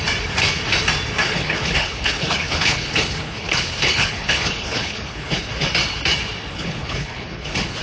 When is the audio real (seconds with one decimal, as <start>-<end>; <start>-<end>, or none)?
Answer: 0.0-1.2; 5.5-6.5

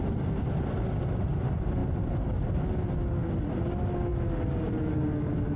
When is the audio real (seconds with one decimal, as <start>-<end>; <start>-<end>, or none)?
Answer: 0.0-5.6